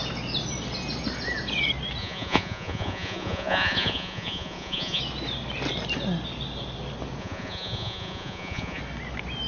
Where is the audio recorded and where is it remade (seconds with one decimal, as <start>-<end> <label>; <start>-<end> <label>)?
0.0-2.0 recorded; 2.0-5.0 remade; 5.0-7.2 recorded; 7.2-8.8 remade; 8.8-9.5 recorded